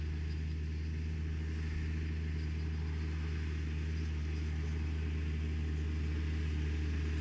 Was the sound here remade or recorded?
recorded